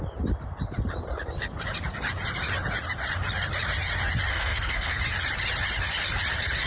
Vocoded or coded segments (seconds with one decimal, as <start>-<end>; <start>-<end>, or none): 4.3-5.0